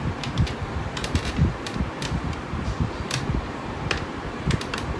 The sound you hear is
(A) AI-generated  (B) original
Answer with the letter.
A